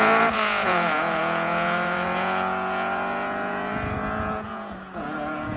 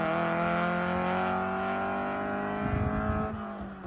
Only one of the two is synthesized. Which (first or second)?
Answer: first